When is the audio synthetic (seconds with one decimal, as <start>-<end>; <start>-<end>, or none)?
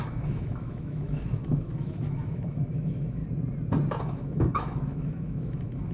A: 0.0-3.2; 4.0-5.9